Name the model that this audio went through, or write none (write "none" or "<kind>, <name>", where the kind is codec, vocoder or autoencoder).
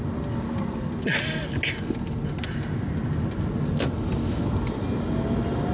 none